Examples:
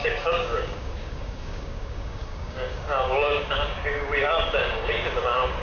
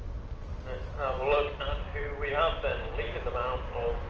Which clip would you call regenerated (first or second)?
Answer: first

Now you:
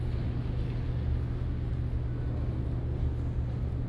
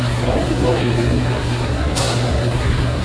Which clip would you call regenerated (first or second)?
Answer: second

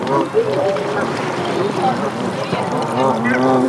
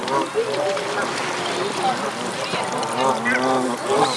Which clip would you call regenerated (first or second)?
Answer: first